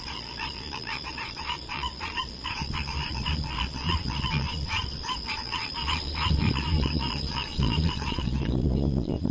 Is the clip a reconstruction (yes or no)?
yes